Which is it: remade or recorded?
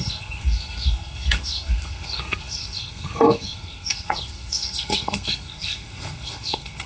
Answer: remade